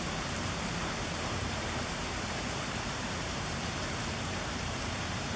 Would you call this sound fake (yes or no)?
yes